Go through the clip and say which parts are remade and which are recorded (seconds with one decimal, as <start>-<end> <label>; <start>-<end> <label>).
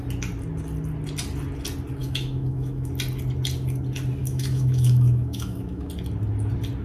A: 0.0-2.0 recorded; 2.0-2.9 remade; 2.9-4.2 recorded; 4.2-5.9 remade; 5.9-6.8 recorded